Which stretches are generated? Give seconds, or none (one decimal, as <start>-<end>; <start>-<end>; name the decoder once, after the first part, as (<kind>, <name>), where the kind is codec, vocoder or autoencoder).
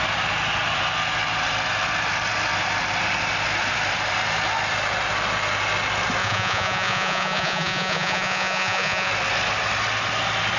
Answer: 6.2-9.1 (vocoder, Vocos)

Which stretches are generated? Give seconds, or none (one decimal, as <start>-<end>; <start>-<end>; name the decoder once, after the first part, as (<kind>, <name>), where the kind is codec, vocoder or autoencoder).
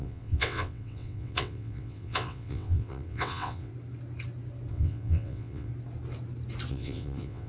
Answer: 0.0-3.7 (vocoder, WaveNeXt); 4.7-5.7; 6.7-7.5